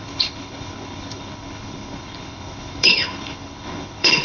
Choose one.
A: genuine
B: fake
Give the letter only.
B